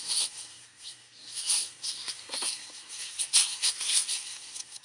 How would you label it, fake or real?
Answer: fake